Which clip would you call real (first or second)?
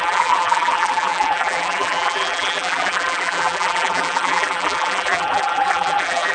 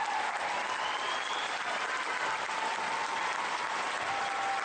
second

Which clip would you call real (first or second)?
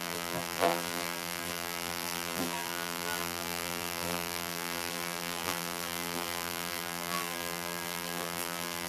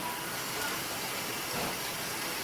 second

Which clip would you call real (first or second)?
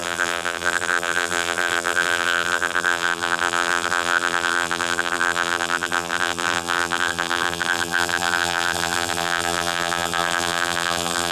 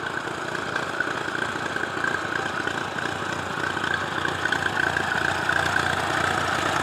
second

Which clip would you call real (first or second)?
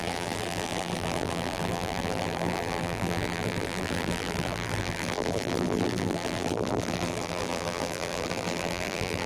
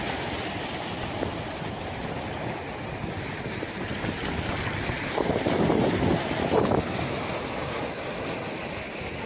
second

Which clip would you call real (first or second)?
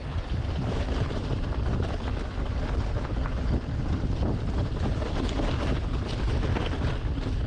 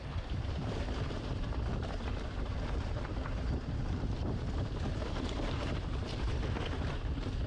first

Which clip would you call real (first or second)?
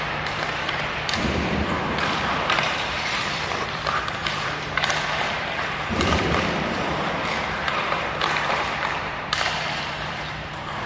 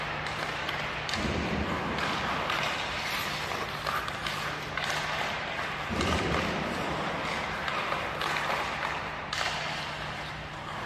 second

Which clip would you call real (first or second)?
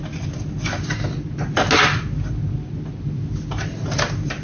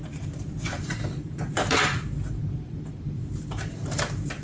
first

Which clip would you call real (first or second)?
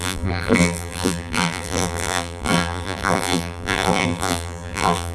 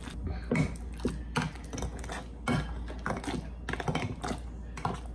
second